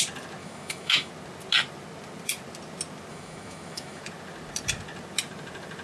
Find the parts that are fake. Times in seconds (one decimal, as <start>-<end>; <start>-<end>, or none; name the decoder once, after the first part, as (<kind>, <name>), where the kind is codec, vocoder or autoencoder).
0.4-1.1 (autoencoder, DAC-VAE); 3.1-4.0